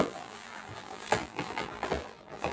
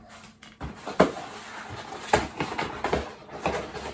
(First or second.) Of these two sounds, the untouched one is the second